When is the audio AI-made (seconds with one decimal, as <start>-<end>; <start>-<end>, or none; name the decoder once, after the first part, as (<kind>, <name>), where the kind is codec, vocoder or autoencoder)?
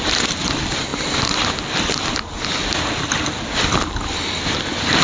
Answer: none